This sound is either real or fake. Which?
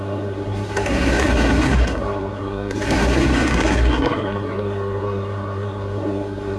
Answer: fake